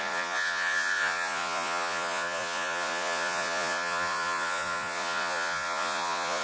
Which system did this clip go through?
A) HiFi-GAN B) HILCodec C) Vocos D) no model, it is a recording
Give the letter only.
C